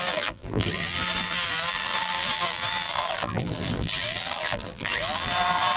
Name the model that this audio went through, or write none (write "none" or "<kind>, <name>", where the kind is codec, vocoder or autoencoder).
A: vocoder, BigVGAN v2